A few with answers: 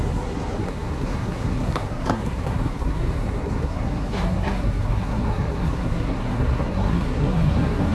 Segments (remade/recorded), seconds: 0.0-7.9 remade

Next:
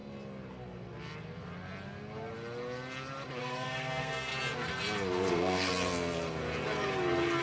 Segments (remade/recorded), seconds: 0.0-3.4 recorded; 3.4-4.3 remade; 4.3-5.3 recorded; 5.3-5.7 remade; 5.7-7.4 recorded